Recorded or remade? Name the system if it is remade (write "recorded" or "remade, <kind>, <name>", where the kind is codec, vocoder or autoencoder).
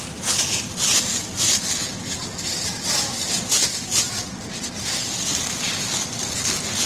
recorded